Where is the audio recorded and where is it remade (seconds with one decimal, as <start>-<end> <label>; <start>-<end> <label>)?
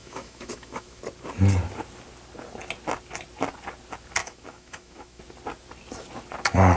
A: 0.0-1.0 remade; 1.0-4.2 recorded; 4.2-5.2 remade; 5.2-6.8 recorded